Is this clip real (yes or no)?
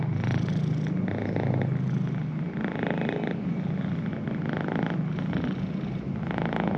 yes